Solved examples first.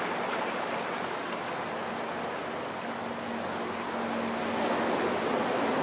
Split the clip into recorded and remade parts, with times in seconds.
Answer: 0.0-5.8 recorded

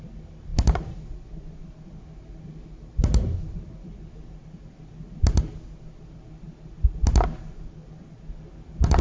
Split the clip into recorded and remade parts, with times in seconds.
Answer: 0.0-9.0 recorded